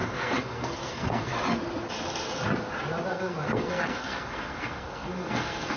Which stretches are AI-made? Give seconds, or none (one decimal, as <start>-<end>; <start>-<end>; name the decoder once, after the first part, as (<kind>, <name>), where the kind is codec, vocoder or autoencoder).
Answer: 0.0-1.3 (codec, SNAC); 3.1-5.8